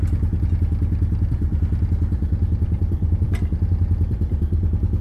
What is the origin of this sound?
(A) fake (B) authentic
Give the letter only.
A